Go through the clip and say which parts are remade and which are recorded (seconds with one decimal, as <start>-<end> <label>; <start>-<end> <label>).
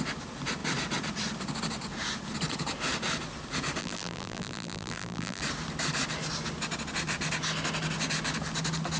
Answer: 0.0-3.8 recorded; 3.8-5.4 remade; 5.4-9.0 recorded